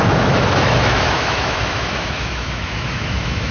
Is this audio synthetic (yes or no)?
yes